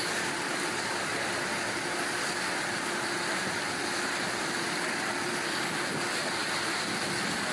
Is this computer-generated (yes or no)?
no